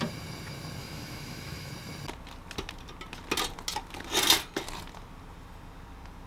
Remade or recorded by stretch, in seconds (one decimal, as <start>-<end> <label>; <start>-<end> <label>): 0.0-0.8 recorded; 0.8-1.7 remade; 1.7-6.3 recorded